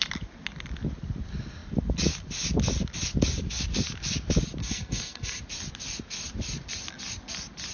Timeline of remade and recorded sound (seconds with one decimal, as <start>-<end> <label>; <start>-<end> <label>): 0.0-4.6 recorded; 4.6-5.4 remade; 5.4-7.7 recorded